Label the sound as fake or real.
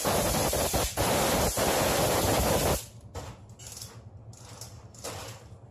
real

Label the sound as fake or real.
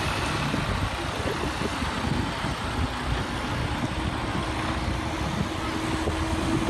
real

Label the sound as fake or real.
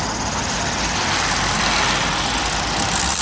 real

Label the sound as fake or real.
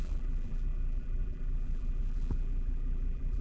fake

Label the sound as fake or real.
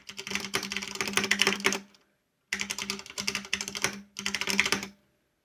real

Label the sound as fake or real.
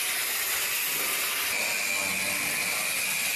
real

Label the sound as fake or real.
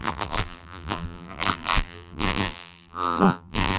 fake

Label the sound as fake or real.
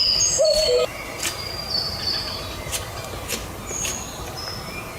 real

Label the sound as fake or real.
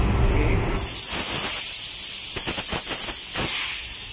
real